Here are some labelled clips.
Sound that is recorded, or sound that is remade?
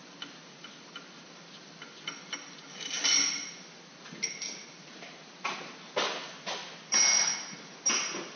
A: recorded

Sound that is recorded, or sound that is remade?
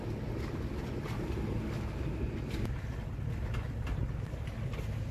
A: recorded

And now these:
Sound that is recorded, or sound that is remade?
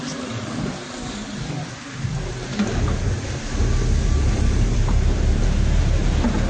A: remade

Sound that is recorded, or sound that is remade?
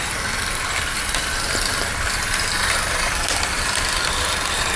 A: remade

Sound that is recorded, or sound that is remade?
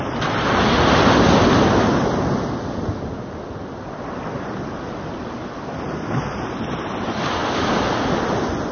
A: recorded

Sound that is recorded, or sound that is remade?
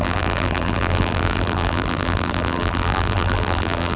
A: remade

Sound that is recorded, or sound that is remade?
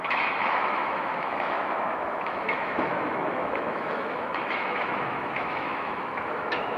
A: remade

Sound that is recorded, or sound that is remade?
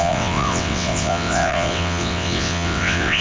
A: remade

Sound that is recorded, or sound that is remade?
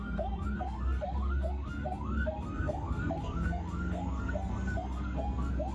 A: remade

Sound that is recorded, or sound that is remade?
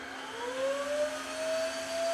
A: recorded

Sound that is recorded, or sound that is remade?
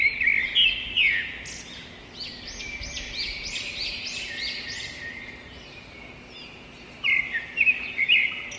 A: recorded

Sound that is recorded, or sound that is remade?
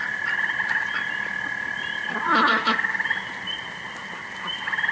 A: recorded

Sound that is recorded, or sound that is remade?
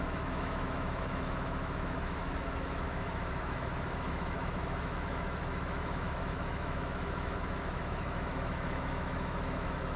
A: remade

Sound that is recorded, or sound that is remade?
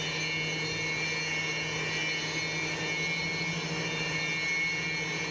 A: recorded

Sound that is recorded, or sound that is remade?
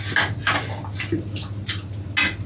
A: recorded